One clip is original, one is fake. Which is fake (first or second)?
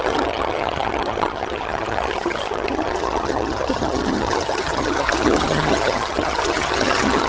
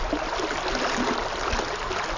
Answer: first